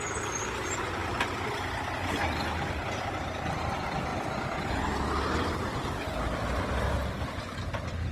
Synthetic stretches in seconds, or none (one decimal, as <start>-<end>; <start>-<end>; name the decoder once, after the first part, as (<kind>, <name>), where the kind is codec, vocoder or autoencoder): none